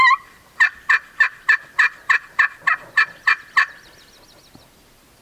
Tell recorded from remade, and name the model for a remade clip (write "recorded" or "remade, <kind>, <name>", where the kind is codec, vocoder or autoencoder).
recorded